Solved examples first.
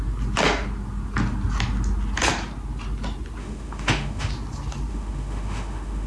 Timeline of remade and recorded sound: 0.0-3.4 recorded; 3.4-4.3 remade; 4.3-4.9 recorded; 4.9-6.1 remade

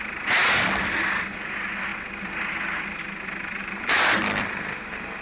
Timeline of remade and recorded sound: 0.0-3.6 recorded; 3.6-4.2 remade; 4.2-5.2 recorded